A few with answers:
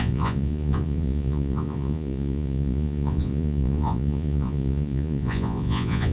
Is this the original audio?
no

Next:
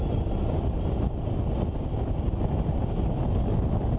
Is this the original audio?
yes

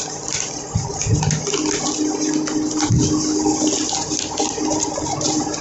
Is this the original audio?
yes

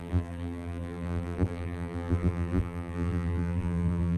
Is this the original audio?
no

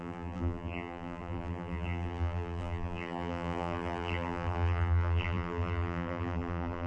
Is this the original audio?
no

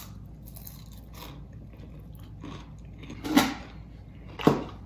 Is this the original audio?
yes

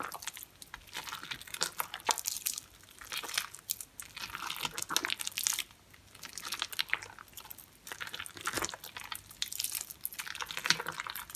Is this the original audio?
yes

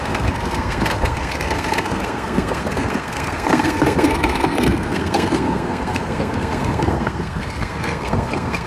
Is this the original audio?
no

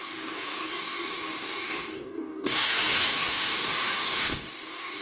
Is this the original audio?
no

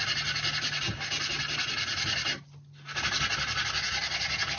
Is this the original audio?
yes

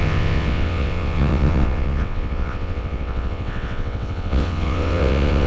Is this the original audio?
no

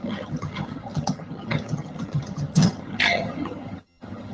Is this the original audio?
no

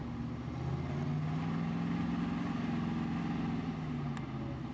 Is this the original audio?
yes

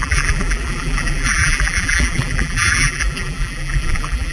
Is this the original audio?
no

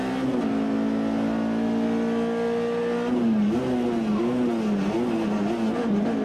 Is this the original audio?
yes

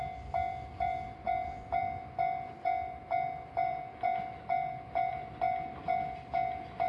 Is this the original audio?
no